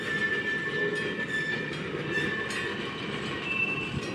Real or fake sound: real